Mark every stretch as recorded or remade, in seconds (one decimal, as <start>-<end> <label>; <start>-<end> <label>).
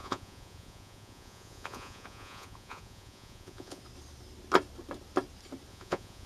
0.0-3.8 remade; 3.8-5.7 recorded; 5.7-6.3 remade